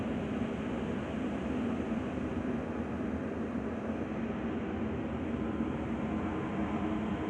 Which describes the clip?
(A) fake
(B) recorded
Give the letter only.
B